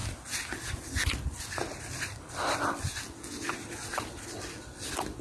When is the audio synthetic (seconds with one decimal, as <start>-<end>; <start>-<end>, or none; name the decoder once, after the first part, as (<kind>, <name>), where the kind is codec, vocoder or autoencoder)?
none